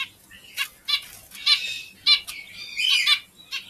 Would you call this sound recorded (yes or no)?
yes